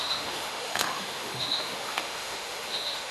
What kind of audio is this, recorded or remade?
remade